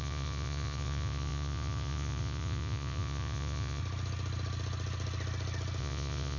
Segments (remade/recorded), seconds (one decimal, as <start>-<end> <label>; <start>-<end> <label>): 0.0-3.8 remade; 3.8-5.8 recorded; 5.8-6.4 remade